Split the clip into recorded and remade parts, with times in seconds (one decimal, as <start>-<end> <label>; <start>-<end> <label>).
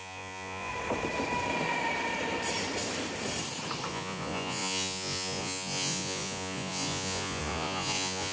0.0-0.7 remade; 0.7-3.9 recorded; 3.9-8.3 remade